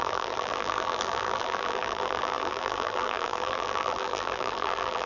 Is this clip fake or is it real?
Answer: fake